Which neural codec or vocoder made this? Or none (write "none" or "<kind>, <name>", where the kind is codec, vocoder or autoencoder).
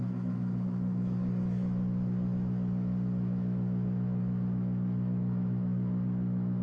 autoencoder, DAC-VAE